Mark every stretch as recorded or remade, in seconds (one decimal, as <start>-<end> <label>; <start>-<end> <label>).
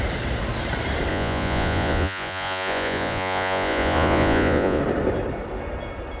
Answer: 0.0-1.1 recorded; 1.1-4.8 remade; 4.8-6.2 recorded